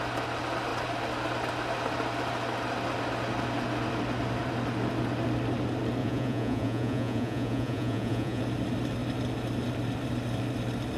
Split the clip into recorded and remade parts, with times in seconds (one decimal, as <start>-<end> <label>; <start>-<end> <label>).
0.0-6.0 recorded; 6.0-8.4 remade; 8.4-11.0 recorded